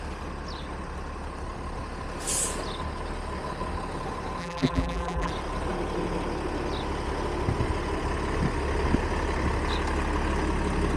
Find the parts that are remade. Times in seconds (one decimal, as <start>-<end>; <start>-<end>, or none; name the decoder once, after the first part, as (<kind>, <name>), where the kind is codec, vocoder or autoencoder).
4.4-5.3 (vocoder, BigVGAN v2)